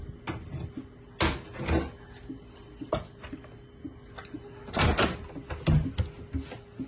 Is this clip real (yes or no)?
yes